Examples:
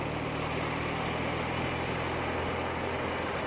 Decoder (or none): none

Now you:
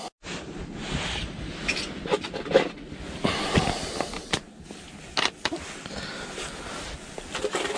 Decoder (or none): none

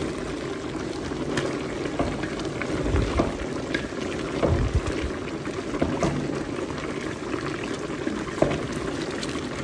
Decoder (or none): none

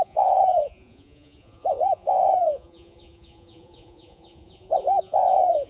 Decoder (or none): vocoder, Vocos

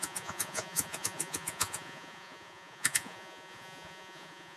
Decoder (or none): vocoder, Vocos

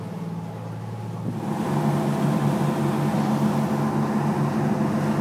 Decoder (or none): none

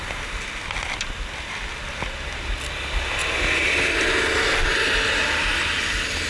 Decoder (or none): none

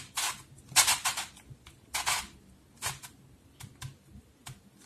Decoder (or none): none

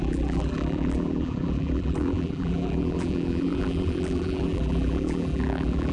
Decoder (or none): vocoder, BigVGAN v2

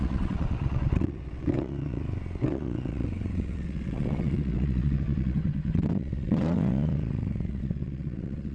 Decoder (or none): vocoder, WaveNeXt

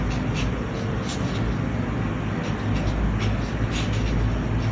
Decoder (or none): none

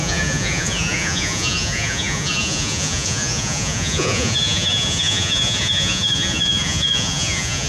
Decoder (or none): vocoder, Vocos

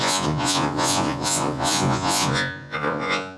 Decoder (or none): vocoder, Vocos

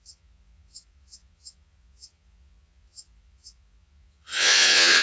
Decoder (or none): vocoder, Vocos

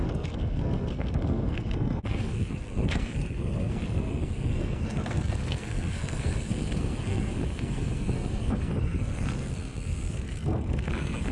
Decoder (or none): codec, SNAC